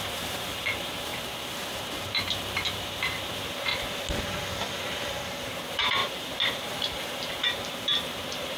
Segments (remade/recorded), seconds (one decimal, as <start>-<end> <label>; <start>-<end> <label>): 0.0-3.7 remade; 3.7-4.2 recorded; 4.2-8.6 remade